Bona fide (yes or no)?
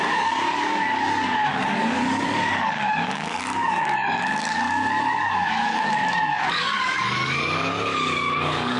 no